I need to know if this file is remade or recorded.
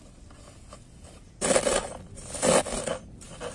recorded